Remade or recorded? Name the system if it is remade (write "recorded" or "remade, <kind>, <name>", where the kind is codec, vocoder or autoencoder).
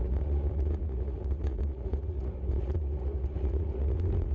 remade, vocoder, Vocos